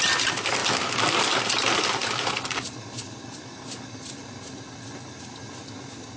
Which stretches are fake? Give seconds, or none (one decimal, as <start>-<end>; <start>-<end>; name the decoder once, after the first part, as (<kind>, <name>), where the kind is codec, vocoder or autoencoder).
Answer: none